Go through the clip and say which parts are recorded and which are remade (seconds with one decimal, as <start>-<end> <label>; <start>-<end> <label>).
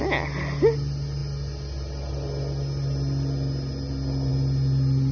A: 0.0-5.1 recorded